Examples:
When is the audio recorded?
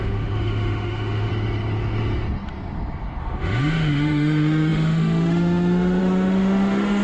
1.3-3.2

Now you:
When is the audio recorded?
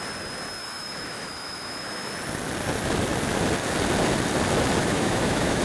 0.0-0.6; 2.1-4.8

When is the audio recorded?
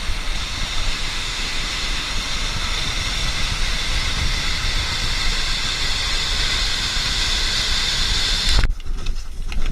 0.0-0.9; 2.1-9.7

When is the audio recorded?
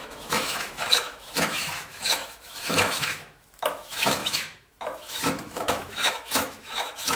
none